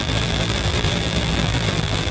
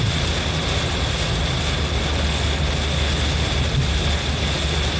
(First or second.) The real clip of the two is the second